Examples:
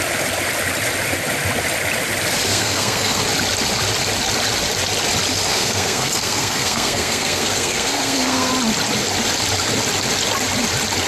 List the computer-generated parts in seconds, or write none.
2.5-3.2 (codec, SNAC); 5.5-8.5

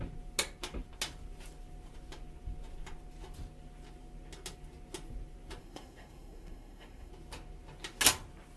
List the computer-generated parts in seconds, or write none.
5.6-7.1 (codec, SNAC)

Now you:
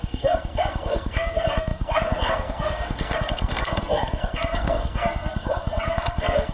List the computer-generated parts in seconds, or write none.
0.0-6.5 (codec, SNAC)